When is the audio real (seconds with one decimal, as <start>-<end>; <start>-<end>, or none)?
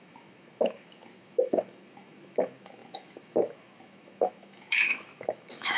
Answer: none